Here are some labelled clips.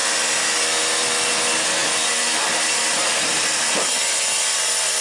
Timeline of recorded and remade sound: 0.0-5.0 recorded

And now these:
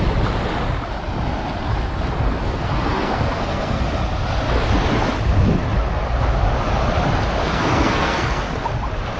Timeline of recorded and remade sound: 0.0-2.4 recorded; 2.4-3.8 remade; 3.8-7.4 recorded; 7.4-8.4 remade; 8.4-9.2 recorded

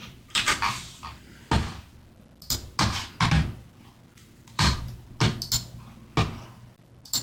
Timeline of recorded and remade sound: 0.0-1.2 remade; 1.2-4.2 recorded; 4.2-5.1 remade; 5.1-7.2 recorded

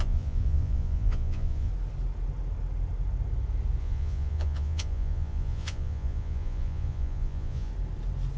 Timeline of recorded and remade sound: 0.0-1.7 remade; 1.7-3.8 recorded; 3.8-7.7 remade; 7.7-8.4 recorded

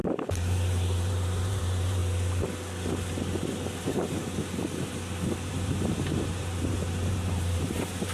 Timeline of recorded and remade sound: 0.0-2.0 remade; 2.0-5.5 recorded; 5.5-8.1 remade